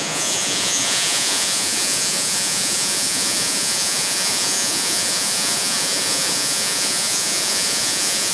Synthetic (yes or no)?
yes